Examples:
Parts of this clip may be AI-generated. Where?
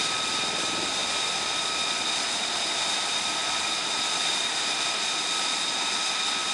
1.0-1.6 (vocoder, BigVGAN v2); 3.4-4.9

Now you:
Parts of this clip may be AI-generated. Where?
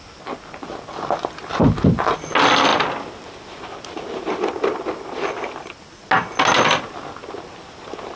none